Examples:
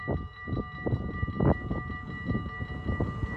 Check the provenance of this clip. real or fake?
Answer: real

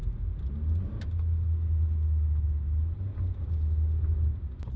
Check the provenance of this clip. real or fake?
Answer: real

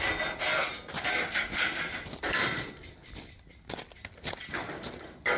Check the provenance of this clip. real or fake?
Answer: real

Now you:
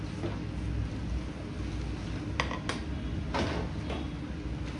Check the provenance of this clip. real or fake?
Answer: real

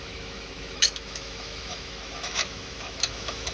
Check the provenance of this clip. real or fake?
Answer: fake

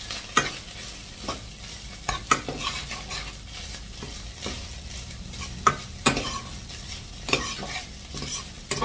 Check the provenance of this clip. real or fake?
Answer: real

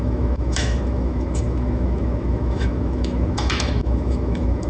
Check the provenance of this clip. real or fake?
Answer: fake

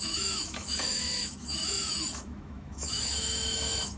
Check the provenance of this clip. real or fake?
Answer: fake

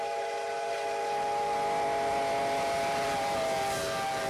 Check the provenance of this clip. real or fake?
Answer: real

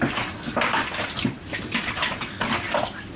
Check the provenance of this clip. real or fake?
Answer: real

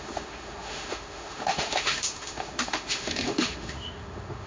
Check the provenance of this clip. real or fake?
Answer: fake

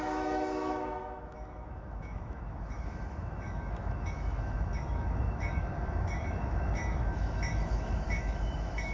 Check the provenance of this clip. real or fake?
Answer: fake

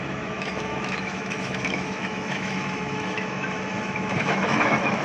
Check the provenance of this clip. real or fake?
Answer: fake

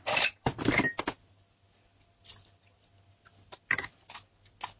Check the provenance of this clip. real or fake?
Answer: real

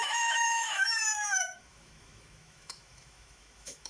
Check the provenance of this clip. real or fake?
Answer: fake